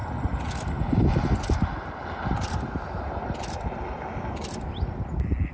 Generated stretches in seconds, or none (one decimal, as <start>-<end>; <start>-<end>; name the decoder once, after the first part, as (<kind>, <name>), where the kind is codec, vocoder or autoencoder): none